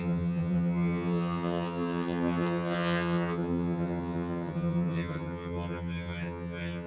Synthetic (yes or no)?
yes